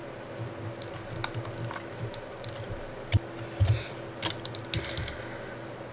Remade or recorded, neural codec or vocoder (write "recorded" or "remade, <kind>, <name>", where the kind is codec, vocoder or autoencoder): recorded